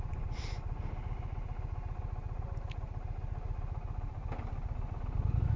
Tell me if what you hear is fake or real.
real